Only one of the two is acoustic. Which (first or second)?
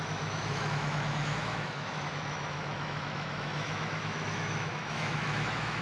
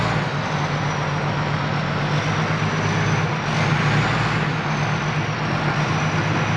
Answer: second